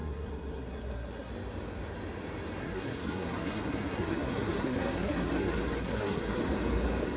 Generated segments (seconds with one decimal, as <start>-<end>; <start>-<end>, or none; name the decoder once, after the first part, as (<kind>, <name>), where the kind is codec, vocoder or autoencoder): 0.0-1.3 (codec, SNAC); 2.6-6.4